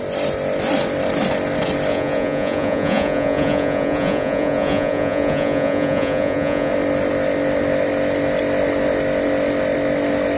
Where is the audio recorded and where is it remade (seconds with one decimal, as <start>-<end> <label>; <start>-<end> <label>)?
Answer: 0.0-1.9 recorded; 1.9-6.7 remade; 6.7-10.4 recorded